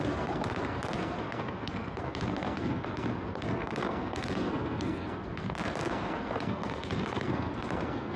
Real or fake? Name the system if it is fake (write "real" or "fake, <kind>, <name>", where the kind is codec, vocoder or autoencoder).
fake, codec, SNAC